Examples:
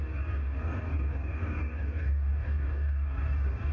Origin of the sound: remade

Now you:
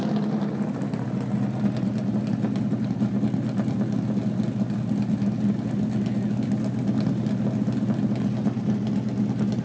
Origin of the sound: recorded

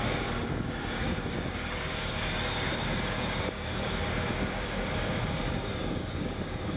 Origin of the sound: remade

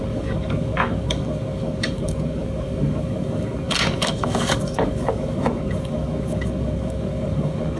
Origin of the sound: remade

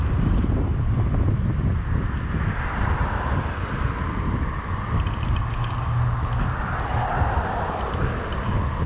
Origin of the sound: recorded